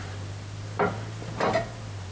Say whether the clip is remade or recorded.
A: recorded